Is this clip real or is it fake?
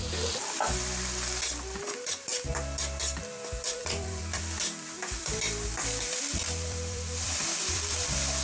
fake